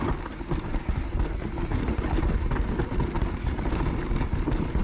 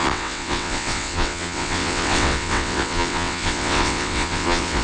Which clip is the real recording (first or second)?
first